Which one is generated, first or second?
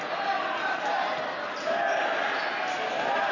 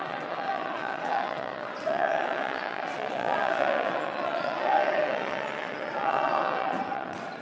second